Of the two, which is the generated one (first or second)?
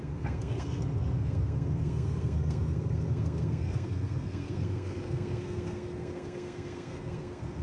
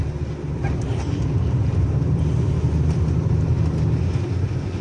first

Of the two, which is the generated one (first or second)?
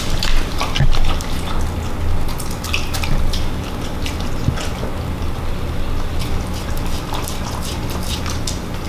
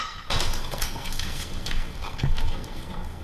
second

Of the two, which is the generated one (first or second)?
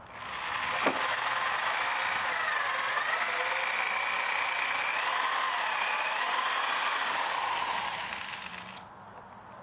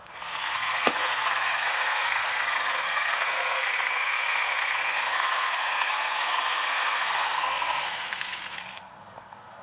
second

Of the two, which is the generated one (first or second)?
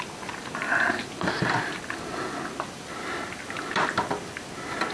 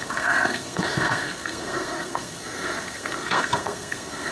second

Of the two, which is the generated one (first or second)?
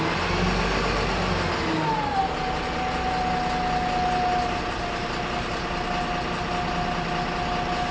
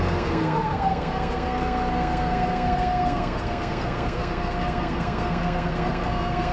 second